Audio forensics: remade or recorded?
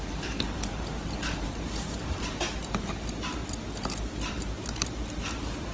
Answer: remade